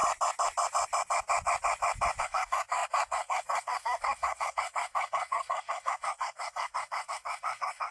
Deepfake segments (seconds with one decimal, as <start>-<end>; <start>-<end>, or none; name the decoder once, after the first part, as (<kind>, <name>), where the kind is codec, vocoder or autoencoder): 2.2-7.9 (codec, SNAC)